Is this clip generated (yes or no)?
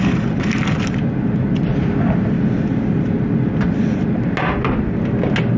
no